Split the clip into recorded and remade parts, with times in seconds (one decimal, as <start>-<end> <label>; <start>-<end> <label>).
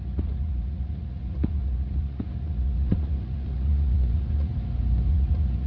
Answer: 0.0-4.5 remade; 4.5-5.1 recorded; 5.1-5.7 remade